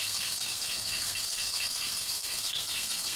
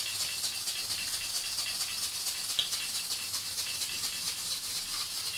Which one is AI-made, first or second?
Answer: first